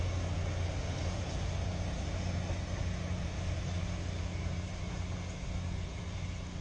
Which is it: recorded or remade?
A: recorded